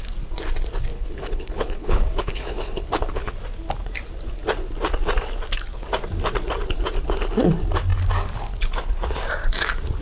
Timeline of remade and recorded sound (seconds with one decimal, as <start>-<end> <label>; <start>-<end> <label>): 0.0-0.9 recorded; 0.9-3.3 remade; 3.3-10.0 recorded